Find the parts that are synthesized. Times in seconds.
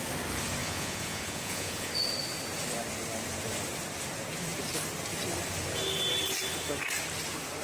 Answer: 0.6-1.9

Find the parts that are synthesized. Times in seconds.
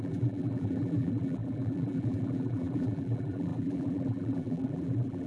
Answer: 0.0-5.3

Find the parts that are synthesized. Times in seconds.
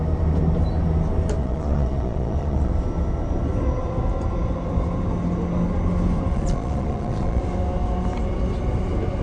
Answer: 1.4-2.7; 6.3-7.4